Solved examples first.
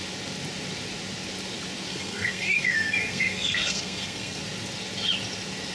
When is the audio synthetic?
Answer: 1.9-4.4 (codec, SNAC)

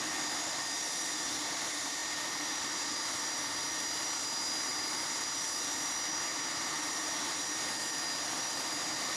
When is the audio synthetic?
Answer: none